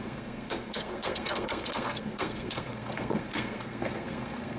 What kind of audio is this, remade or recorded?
remade